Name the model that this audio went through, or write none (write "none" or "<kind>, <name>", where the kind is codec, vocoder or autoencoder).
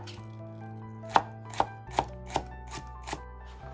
none